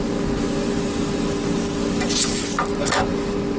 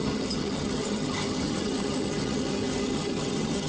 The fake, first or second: second